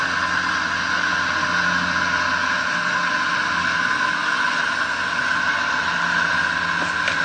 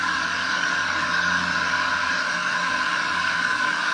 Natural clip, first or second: first